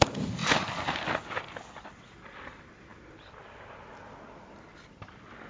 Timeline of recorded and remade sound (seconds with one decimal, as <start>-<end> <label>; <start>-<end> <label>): 0.0-5.5 recorded